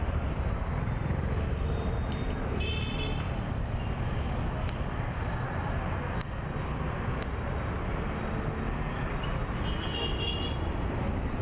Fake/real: real